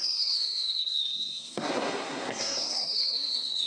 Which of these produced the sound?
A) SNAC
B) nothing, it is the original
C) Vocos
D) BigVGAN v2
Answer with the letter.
A